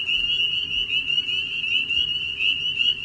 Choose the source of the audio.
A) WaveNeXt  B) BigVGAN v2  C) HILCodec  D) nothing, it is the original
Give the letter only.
D